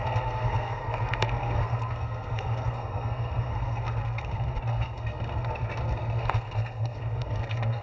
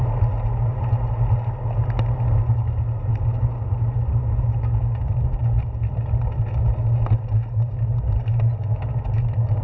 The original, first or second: second